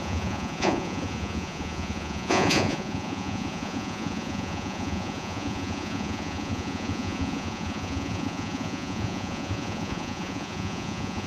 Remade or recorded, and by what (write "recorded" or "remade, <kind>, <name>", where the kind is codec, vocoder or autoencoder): remade, vocoder, Vocos